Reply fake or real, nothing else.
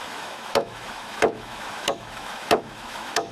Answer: fake